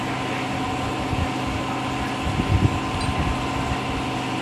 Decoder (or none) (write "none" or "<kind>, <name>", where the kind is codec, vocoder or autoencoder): none